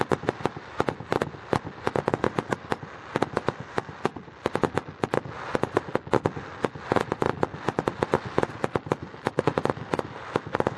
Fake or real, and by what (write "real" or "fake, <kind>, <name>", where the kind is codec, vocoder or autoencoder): real